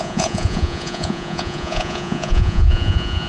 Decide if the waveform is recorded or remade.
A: remade